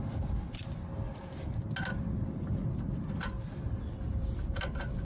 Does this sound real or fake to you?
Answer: real